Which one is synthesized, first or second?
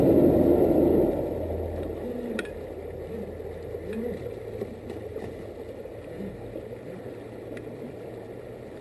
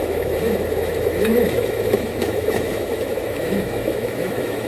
second